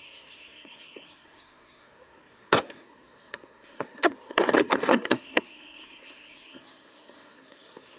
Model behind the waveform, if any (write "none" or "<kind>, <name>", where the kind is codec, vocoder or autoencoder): codec, SNAC